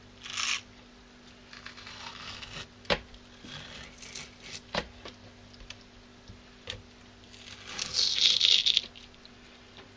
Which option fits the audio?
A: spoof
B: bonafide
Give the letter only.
B